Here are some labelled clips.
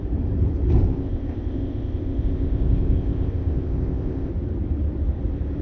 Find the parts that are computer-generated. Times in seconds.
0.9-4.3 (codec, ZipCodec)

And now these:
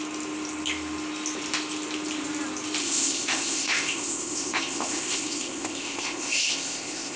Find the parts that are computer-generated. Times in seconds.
2.8-7.2 (codec, ZipCodec)

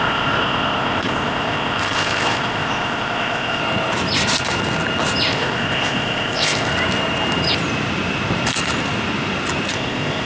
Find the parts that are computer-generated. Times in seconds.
0.0-3.6 (codec, ZipCodec); 5.3-6.7; 9.7-10.3

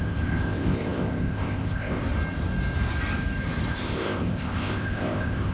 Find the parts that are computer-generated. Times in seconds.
0.0-2.0 (codec, ZipCodec); 3.7-5.5

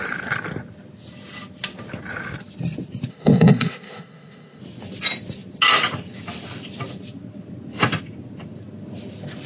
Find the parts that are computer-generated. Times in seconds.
3.1-4.6 (codec, ZipCodec)

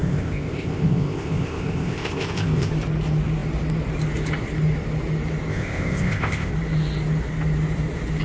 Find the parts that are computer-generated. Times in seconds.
0.0-2.7 (codec, ZipCodec); 5.5-6.5

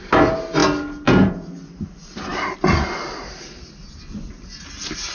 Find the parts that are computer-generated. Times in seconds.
none